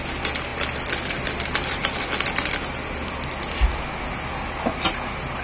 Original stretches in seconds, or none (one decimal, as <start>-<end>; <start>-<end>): 0.0-5.4